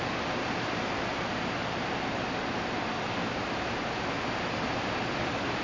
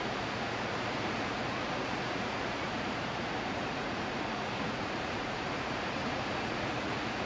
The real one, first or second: first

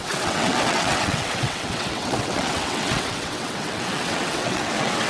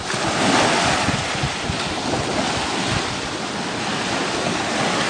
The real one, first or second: second